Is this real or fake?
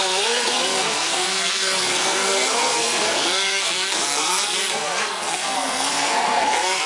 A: fake